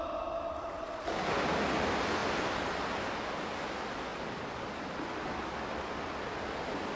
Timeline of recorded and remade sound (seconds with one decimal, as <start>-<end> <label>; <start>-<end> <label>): 0.0-7.0 recorded

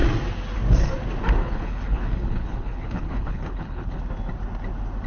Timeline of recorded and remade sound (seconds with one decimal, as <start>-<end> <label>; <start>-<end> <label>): 0.0-1.4 recorded; 1.4-4.0 remade; 4.0-5.1 recorded

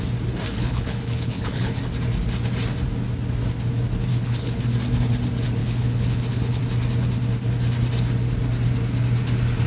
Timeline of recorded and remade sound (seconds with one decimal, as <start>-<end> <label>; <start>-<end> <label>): 0.0-0.5 recorded; 0.5-1.8 remade; 1.8-4.1 recorded; 4.1-4.6 remade; 4.6-5.6 recorded; 5.6-6.6 remade; 6.6-9.7 recorded

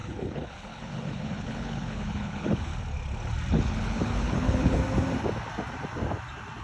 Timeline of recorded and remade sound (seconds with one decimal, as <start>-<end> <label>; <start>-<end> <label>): 0.0-2.7 remade; 2.7-3.5 recorded; 3.5-4.8 remade; 4.8-6.6 recorded

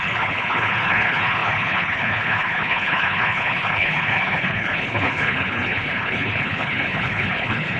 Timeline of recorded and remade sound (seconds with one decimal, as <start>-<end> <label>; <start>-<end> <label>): 0.0-7.8 remade

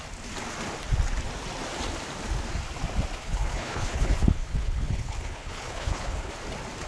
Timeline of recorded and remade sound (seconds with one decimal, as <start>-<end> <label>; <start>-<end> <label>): 0.0-3.2 recorded; 3.2-6.3 remade; 6.3-6.9 recorded

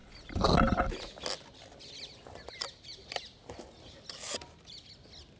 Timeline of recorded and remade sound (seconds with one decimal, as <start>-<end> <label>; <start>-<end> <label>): 0.0-5.4 recorded

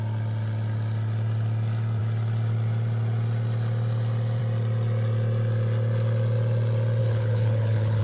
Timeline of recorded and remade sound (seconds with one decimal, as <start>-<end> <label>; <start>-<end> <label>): 0.0-7.0 recorded; 7.0-8.0 remade